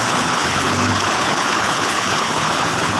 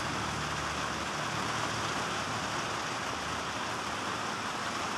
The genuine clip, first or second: second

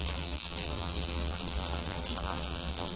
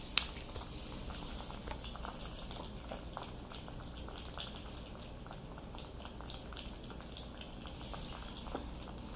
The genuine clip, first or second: second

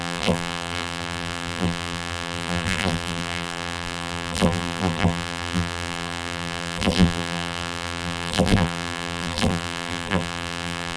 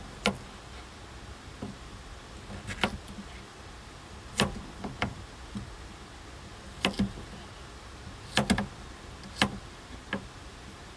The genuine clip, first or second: second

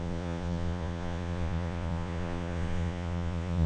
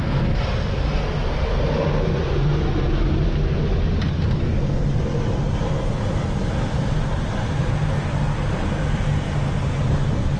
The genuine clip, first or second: second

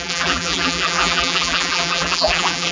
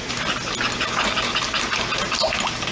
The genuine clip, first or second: second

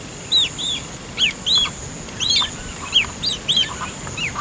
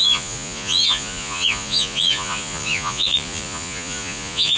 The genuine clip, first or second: first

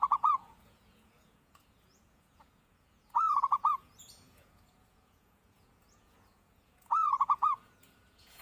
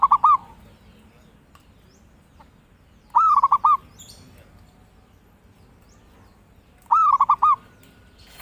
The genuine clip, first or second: second